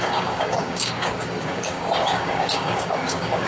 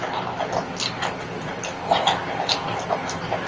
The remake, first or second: first